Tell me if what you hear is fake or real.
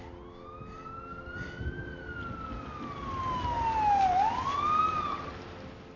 real